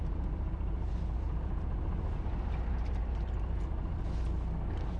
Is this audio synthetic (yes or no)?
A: no